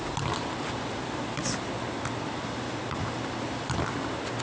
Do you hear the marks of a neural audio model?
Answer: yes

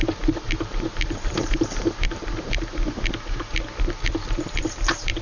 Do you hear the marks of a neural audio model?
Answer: yes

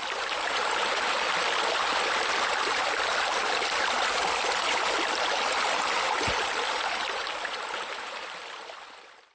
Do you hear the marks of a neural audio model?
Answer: yes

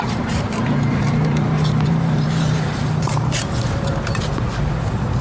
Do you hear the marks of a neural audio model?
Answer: yes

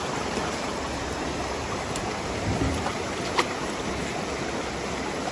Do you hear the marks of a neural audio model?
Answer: yes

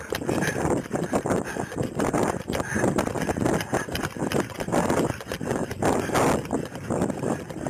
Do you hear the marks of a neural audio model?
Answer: no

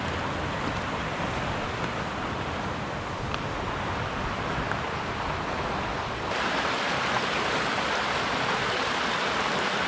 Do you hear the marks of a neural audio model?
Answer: no